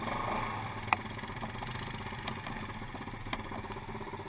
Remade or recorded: recorded